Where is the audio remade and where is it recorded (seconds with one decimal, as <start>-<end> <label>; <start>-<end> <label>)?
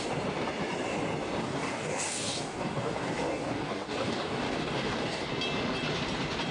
0.0-1.4 recorded; 1.4-5.3 remade; 5.3-6.5 recorded